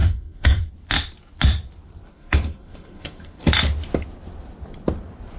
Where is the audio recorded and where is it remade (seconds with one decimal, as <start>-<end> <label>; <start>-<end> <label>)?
0.0-0.7 remade; 0.7-2.1 recorded; 2.1-3.4 remade; 3.4-5.4 recorded